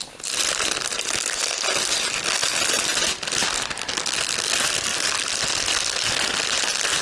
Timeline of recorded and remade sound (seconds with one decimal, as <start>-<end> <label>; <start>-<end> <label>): 0.0-7.0 recorded